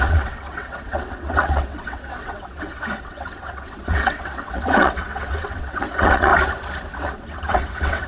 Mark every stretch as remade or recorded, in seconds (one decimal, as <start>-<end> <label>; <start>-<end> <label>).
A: 0.0-6.3 remade; 6.3-7.0 recorded; 7.0-8.1 remade